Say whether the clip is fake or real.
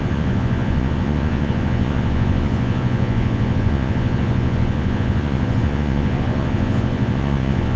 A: fake